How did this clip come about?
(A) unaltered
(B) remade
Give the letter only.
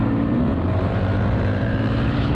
B